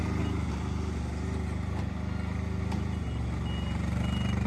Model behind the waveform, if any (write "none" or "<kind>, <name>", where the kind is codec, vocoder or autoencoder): none